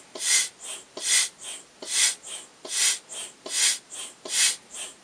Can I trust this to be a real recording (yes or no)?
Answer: yes